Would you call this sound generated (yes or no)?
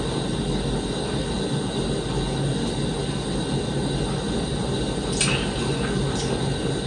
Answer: no